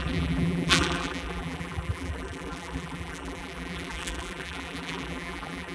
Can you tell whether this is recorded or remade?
remade